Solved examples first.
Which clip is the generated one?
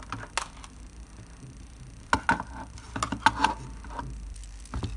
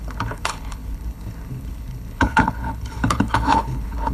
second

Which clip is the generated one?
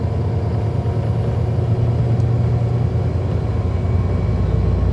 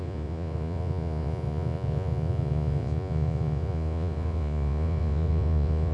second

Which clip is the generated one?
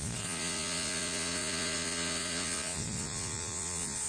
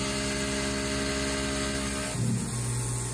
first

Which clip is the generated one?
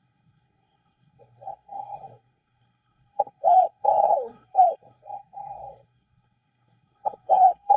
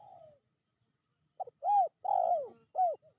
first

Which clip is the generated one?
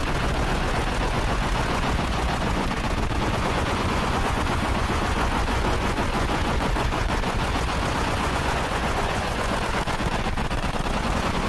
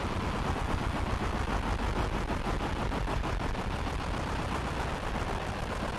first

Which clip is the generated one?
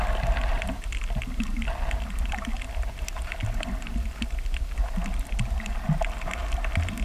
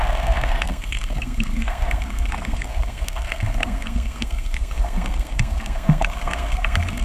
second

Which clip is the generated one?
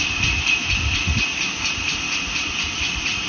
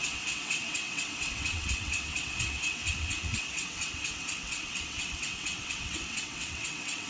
second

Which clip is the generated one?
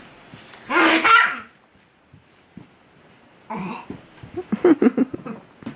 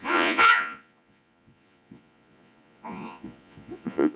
second